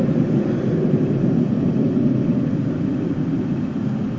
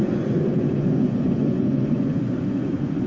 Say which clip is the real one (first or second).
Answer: first